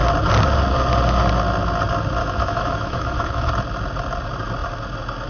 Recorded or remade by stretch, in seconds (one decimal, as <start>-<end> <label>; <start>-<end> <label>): 0.0-2.2 recorded; 2.2-3.5 remade; 3.5-5.3 recorded

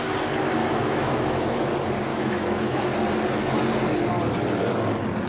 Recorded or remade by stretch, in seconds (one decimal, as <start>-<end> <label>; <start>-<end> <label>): 0.0-0.6 recorded; 0.6-1.7 remade; 1.7-2.1 recorded; 2.1-2.8 remade; 2.8-5.3 recorded